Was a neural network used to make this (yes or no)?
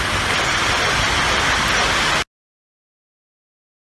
no